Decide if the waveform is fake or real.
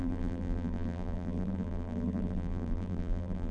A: fake